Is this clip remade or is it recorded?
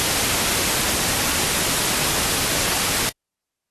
recorded